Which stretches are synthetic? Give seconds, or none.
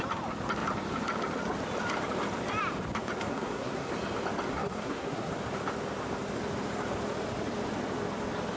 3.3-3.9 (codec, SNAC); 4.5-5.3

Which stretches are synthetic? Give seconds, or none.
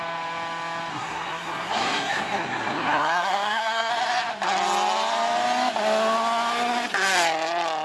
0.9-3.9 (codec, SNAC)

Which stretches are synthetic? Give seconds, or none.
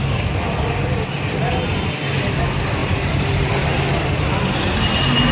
none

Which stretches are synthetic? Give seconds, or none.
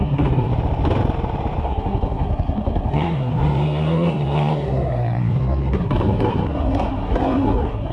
0.0-0.5 (codec, SNAC); 1.6-7.9